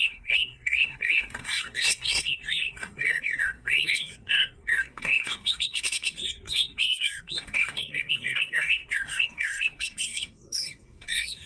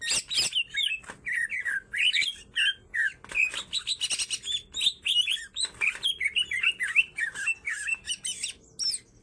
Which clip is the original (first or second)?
second